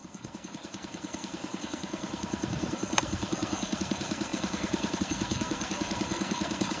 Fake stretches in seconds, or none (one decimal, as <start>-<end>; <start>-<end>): 0.0-6.8